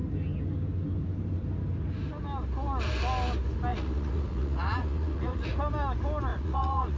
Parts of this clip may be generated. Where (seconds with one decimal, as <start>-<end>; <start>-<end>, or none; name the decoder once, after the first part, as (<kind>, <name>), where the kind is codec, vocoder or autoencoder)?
3.7-5.5 (vocoder, Vocos); 6.3-7.0

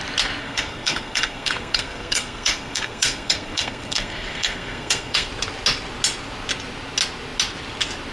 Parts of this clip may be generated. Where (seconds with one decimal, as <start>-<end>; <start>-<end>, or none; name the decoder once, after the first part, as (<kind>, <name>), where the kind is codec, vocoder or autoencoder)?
0.4-5.3 (codec, SNAC)